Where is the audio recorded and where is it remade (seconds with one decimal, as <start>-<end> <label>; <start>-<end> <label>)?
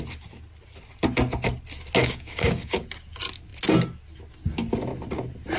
0.0-2.0 recorded; 2.0-2.8 remade; 2.8-5.6 recorded